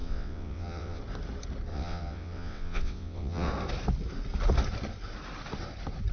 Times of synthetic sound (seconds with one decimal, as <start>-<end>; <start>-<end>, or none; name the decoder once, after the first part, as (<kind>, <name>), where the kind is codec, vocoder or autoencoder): 0.0-1.0 (vocoder, WaveNeXt); 1.7-3.5